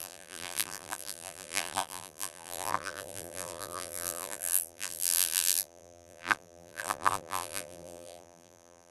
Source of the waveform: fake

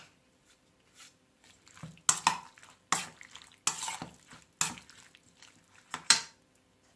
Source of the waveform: real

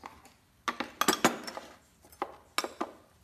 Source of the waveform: real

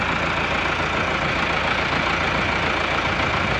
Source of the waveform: real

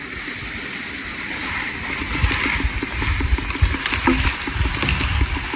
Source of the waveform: real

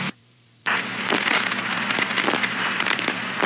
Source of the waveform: fake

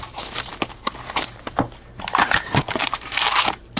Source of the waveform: fake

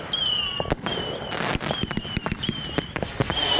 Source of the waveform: real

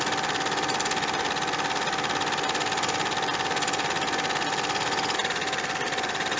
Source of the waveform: real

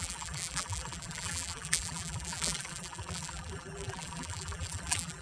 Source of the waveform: fake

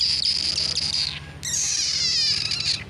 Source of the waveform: real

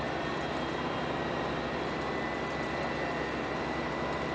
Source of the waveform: fake